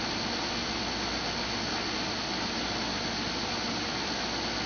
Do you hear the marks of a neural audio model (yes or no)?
no